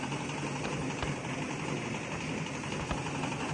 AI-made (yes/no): no